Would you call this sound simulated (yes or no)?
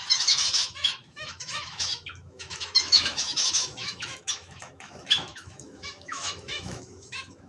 yes